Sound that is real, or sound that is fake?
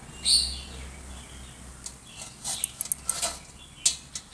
real